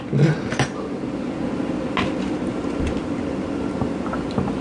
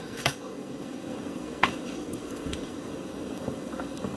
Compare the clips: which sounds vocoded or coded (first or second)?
second